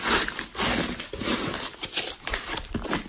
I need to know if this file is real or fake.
real